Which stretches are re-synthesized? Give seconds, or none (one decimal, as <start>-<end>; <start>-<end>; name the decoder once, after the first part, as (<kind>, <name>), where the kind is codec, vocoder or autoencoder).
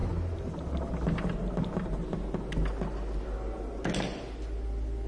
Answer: none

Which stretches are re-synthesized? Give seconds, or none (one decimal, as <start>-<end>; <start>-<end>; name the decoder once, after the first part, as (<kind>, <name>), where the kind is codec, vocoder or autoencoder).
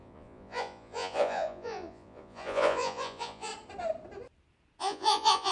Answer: 0.0-3.5 (vocoder, Vocos); 4.8-5.5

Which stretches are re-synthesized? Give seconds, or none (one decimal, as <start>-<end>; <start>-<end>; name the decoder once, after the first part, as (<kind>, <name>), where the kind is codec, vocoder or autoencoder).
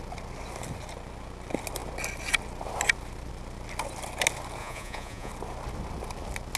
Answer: 4.6-5.3 (vocoder, Vocos)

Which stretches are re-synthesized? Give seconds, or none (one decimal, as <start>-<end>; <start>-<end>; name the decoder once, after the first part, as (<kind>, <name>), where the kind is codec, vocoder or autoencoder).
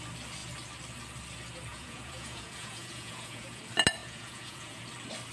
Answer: 1.7-3.6 (vocoder, Vocos); 4.0-4.8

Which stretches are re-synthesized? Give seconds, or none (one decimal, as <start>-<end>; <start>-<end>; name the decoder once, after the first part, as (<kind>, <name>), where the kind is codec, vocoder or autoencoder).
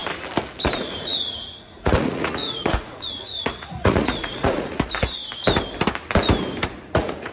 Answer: 0.6-5.2 (vocoder, Vocos); 6.8-7.3